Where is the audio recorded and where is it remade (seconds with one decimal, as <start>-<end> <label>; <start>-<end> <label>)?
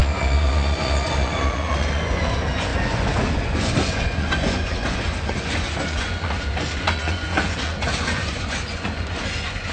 0.0-9.7 remade